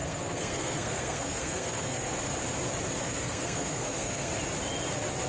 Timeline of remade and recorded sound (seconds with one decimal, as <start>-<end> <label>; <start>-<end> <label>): 0.0-2.1 remade; 2.1-3.0 recorded; 3.0-4.3 remade; 4.3-5.3 recorded